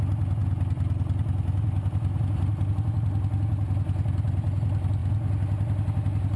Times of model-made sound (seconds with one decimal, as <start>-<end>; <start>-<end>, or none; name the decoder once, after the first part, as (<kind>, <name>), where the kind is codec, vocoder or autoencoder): none